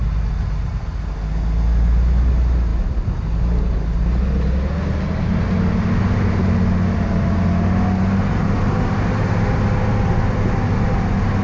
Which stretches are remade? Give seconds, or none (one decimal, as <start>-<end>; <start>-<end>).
none